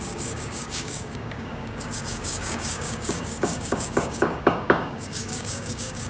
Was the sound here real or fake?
fake